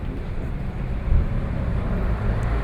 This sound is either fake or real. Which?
fake